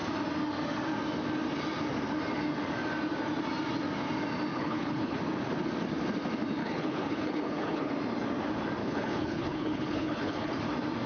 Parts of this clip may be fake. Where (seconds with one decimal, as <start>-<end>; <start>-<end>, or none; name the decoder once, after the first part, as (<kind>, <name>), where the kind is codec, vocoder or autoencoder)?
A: 4.5-5.2 (codec, HILCodec); 6.6-7.9; 8.8-10.5